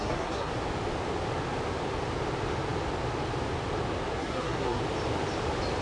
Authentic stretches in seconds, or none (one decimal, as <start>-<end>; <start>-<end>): 0.5-4.2; 4.8-5.8